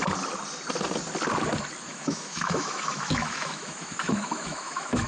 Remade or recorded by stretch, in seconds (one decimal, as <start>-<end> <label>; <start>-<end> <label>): 0.0-1.9 recorded; 1.9-5.1 remade